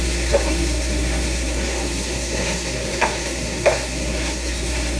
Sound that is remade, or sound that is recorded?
remade